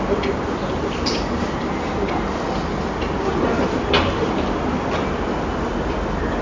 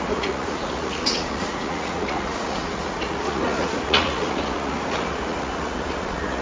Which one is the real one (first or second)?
first